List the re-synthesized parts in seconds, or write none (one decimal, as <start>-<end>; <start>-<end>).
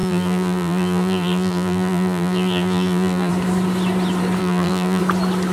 0.0-3.3; 4.4-5.0